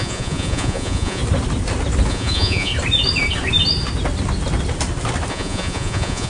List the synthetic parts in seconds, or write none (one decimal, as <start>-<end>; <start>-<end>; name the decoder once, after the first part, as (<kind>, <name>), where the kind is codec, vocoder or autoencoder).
0.0-1.2 (vocoder, Vocos); 2.1-2.7; 5.3-6.3